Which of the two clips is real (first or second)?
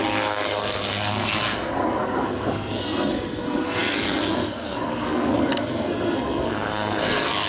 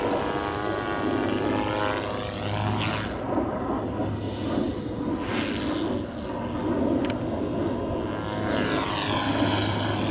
second